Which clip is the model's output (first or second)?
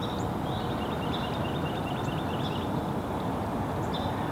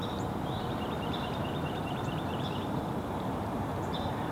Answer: second